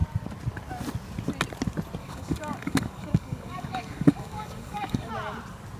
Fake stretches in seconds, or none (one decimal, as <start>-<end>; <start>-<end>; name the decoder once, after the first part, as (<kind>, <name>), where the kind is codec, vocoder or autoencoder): 2.0-5.1 (codec, DAC)